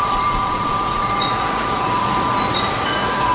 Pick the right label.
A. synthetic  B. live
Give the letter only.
A